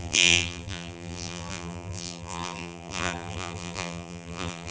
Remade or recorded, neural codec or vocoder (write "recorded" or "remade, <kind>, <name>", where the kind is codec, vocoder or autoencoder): remade, vocoder, BigVGAN v2